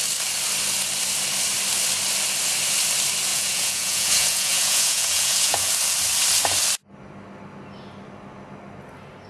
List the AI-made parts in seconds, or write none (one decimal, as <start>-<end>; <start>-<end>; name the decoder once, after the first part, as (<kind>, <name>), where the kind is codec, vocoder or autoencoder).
3.3-5.7 (vocoder, Vocos)